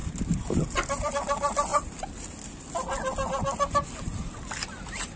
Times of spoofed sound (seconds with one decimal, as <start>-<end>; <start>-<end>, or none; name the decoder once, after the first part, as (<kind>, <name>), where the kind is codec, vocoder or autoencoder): none